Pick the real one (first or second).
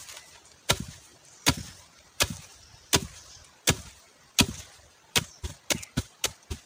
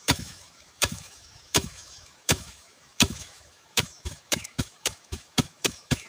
first